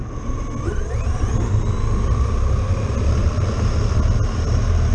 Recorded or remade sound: recorded